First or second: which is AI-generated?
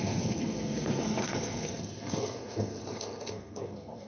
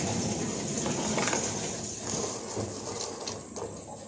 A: first